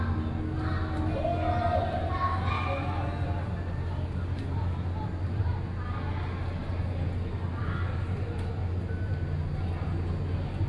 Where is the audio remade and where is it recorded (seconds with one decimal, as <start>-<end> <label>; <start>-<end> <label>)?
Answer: 0.0-10.7 recorded